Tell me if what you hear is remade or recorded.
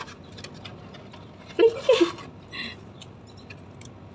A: recorded